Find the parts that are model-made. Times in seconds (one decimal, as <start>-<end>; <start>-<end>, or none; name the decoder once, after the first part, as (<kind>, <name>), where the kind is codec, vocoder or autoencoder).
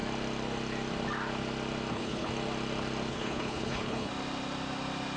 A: 1.9-2.3 (codec, HILCodec); 3.1-4.1